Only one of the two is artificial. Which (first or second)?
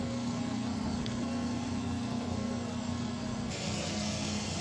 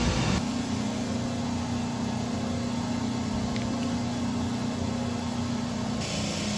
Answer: first